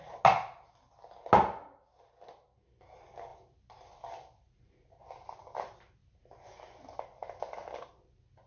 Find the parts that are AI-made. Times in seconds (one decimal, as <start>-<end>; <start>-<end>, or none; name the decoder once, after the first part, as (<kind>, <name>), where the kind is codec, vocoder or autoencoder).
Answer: none

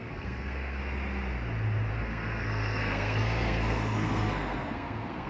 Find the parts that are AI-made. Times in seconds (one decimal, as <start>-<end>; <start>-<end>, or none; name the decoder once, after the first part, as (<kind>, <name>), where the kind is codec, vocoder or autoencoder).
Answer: 0.0-0.8 (codec, SNAC); 1.9-5.3

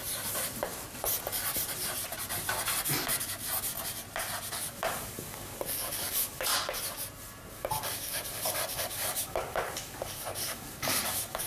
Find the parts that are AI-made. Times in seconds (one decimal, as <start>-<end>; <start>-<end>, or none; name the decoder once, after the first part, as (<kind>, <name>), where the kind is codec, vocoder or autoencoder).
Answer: 4.5-6.5 (codec, DAC); 7.5-11.5

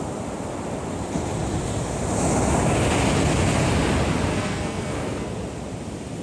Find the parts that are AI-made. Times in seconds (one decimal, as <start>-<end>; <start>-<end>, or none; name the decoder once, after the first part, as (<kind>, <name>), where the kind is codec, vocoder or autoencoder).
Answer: 4.3-5.3 (codec, SNAC)

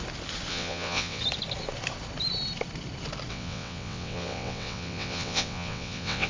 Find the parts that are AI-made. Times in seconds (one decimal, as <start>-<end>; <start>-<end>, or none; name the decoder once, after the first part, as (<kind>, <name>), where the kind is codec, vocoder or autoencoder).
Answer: 0.5-1.2 (vocoder, WaveNeXt); 3.3-6.3

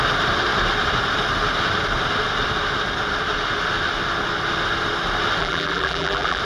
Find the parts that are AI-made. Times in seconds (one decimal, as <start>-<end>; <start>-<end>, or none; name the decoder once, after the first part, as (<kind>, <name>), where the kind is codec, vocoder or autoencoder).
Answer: 5.4-6.4 (vocoder, BigVGAN v2)

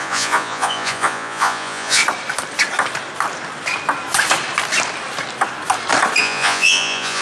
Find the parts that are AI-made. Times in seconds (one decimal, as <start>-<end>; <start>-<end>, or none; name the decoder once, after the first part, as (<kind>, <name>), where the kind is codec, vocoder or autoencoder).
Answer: 0.0-2.0 (vocoder, Vocos); 6.2-7.2

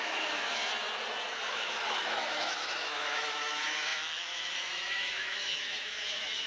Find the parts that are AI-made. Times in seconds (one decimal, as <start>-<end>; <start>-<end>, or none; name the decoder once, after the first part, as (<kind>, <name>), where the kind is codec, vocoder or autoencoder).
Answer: 0.0-0.6 (autoencoder, DAC-VAE); 1.5-6.5